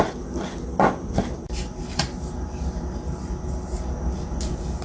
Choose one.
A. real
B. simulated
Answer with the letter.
A